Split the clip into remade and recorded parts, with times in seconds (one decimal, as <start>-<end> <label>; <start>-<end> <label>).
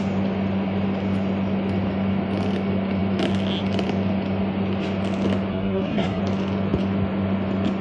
0.0-5.5 recorded; 5.5-6.2 remade; 6.2-7.8 recorded